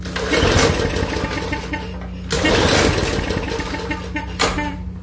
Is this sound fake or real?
real